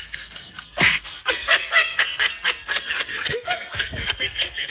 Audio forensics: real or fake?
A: fake